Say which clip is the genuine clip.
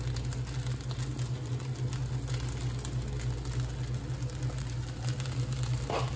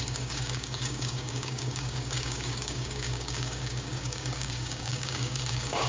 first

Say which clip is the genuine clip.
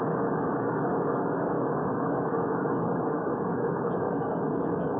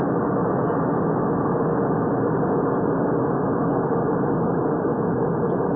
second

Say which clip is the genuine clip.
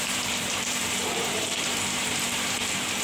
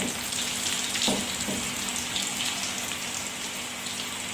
second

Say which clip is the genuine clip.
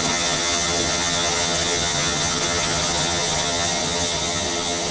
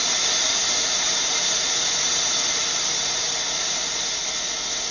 second